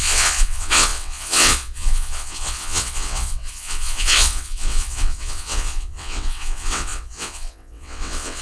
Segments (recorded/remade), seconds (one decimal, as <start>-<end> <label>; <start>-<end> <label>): 0.0-8.4 remade